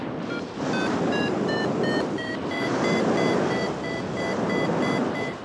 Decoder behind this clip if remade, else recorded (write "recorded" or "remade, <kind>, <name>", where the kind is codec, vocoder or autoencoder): recorded